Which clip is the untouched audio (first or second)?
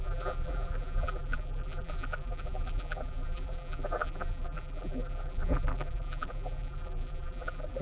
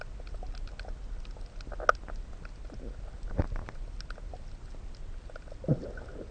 second